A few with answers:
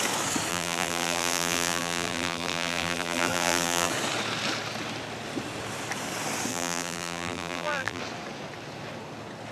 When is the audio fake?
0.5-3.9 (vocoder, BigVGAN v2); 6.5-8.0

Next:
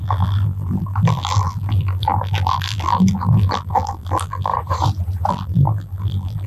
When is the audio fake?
0.0-4.5 (vocoder, BigVGAN v2); 5.3-6.5

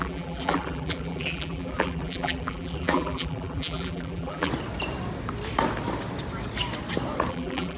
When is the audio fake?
0.0-4.5 (vocoder, BigVGAN v2); 7.3-7.8

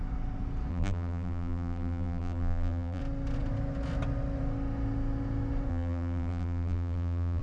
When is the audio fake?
0.7-3.0 (vocoder, BigVGAN v2); 5.7-7.4

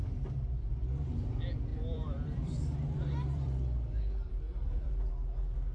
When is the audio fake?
1.7-5.1 (vocoder, BigVGAN v2)

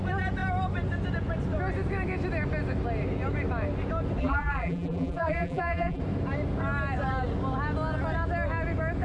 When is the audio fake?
4.2-6.0 (vocoder, BigVGAN v2)

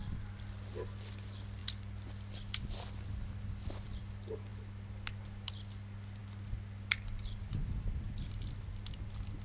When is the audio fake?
none